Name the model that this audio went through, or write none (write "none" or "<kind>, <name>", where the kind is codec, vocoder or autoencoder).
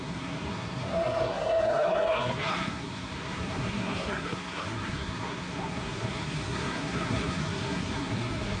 codec, SNAC